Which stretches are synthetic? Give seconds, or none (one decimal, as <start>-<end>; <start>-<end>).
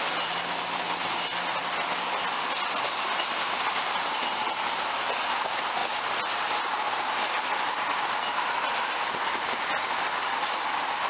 none